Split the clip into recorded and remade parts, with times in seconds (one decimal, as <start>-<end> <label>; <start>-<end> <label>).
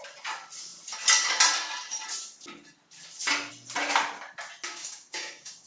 0.0-4.7 recorded; 4.7-5.7 remade